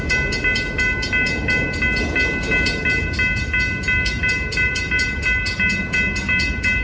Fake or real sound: real